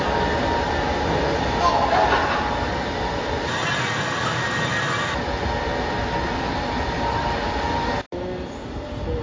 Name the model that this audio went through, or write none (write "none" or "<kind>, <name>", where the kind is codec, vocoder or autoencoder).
none